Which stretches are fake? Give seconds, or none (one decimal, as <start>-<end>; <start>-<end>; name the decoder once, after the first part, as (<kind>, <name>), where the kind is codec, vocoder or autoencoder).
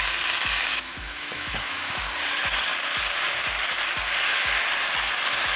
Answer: 0.7-2.1 (autoencoder, DAC-VAE)